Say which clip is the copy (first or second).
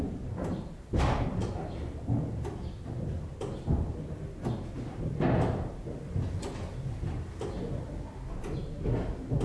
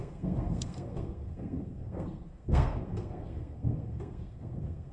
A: second